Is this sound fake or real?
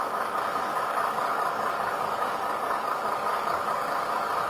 fake